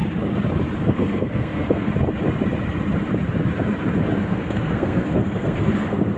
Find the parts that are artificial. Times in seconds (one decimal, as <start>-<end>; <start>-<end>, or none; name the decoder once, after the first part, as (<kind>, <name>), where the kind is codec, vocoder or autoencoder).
0.8-1.9 (codec, SNAC); 4.2-6.2